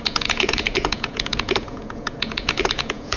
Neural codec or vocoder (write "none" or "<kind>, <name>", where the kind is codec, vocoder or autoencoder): vocoder, Vocos